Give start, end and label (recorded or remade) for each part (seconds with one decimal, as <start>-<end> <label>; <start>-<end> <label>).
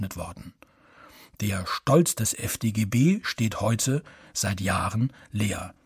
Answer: 0.0-2.4 recorded; 2.4-5.9 remade